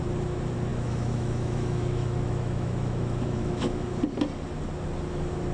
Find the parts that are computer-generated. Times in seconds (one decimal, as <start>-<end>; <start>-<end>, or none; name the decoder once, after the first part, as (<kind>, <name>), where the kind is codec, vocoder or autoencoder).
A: 0.7-4.0 (autoencoder, DAC-VAE)